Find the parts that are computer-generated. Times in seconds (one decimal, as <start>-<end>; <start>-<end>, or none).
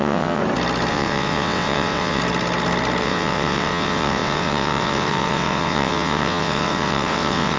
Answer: 0.0-0.4; 0.9-2.2; 3.0-7.6